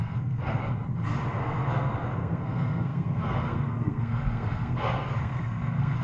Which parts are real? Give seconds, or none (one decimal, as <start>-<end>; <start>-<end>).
0.6-1.4